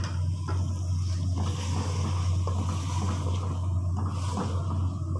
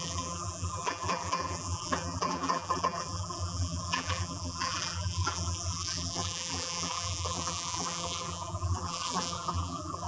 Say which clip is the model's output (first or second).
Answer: second